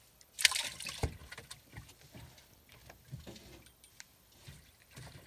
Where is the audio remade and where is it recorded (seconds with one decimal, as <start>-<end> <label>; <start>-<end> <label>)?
0.0-5.3 recorded